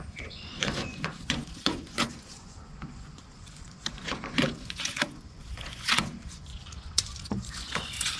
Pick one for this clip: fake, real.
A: fake